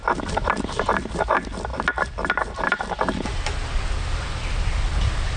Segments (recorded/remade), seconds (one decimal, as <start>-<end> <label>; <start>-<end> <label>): 0.0-5.4 recorded